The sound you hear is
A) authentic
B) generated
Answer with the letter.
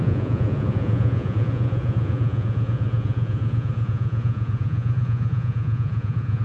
B